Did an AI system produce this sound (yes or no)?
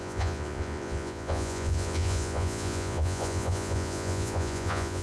yes